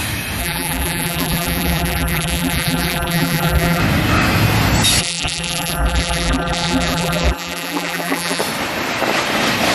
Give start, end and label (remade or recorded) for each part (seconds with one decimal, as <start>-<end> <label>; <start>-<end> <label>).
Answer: 0.0-0.4 recorded; 0.4-3.8 remade; 3.8-5.0 recorded; 5.0-8.4 remade; 8.4-9.7 recorded